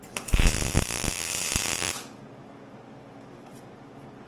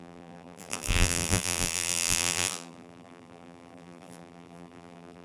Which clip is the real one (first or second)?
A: first